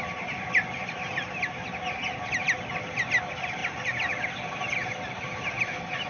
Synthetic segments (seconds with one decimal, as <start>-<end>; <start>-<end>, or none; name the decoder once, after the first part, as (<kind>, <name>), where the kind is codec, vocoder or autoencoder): none